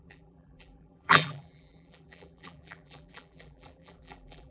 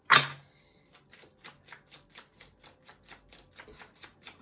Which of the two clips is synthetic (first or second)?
first